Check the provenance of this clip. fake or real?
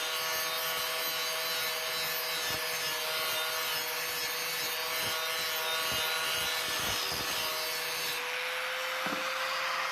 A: real